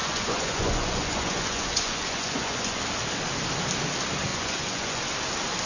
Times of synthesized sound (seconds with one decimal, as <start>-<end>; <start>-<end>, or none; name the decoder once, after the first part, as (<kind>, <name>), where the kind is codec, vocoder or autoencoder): 0.0-2.8 (vocoder, Vocos); 4.3-5.0